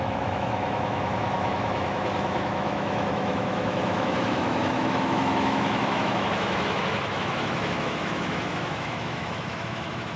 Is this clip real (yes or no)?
no